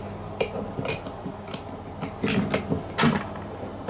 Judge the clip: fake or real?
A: real